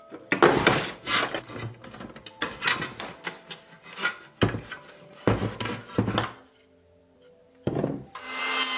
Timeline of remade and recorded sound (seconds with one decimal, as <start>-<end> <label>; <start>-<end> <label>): 0.0-8.8 recorded